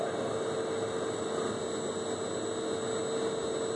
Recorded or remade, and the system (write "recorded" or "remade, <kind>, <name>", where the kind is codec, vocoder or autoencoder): recorded